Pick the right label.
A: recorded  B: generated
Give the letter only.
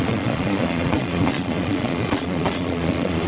B